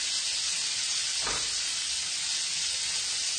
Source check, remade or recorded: recorded